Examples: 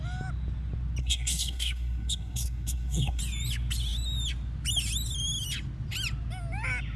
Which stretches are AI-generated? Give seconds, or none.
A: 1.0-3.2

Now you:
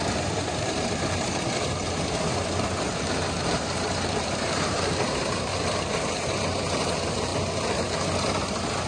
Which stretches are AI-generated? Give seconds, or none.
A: 0.0-5.5; 6.0-7.3

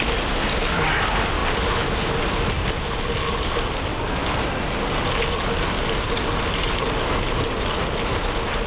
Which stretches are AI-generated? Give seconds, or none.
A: none